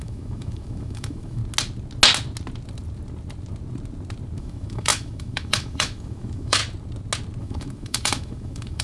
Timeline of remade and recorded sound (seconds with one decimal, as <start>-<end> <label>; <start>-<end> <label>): 0.0-1.4 remade; 1.4-4.4 recorded; 4.4-6.6 remade; 6.6-7.4 recorded; 7.4-8.8 remade